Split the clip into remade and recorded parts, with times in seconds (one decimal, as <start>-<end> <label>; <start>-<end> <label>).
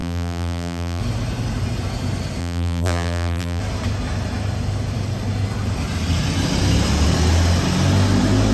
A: 0.0-1.0 remade; 1.0-2.4 recorded; 2.4-3.6 remade; 3.6-8.5 recorded